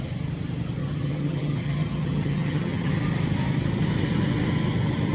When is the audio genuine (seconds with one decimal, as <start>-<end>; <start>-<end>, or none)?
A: 0.0-0.8; 2.9-5.1